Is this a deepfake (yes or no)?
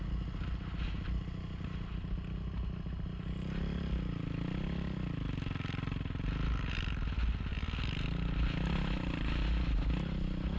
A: no